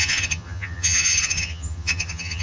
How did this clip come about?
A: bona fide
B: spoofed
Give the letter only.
B